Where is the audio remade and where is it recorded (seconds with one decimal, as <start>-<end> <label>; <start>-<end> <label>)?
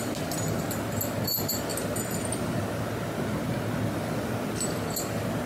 0.0-5.5 recorded